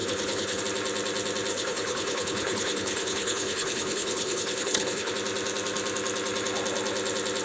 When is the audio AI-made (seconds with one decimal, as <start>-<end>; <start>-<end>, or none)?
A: 0.0-0.6; 1.5-5.1